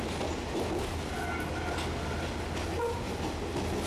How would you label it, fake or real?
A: real